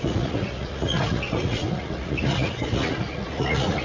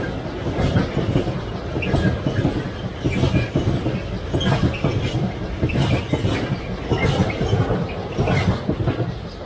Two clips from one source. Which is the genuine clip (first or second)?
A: second